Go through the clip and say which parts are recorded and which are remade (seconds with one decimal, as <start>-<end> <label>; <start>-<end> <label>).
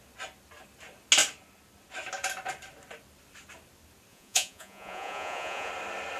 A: 0.0-4.1 recorded; 4.1-5.7 remade; 5.7-6.2 recorded